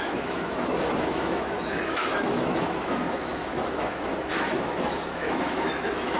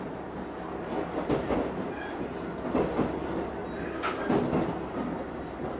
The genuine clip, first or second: second